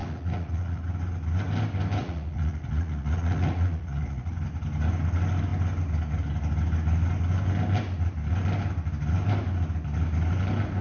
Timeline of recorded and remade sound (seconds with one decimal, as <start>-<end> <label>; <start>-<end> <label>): 0.0-0.8 remade; 0.8-2.0 recorded; 2.0-4.4 remade; 4.4-10.8 recorded